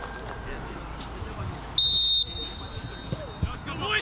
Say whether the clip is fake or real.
real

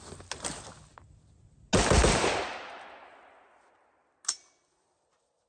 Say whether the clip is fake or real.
real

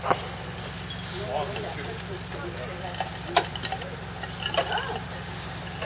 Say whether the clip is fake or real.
real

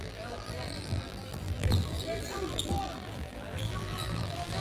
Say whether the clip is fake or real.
fake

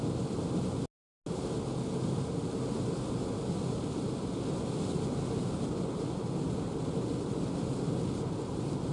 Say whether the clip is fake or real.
real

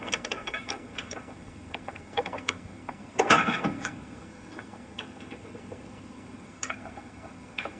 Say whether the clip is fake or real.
fake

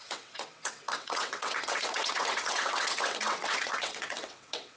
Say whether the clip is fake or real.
fake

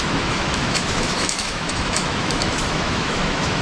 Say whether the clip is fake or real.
fake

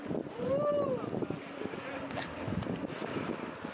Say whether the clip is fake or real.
real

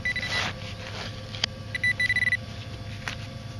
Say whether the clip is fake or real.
real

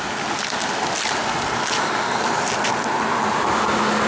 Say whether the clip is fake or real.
real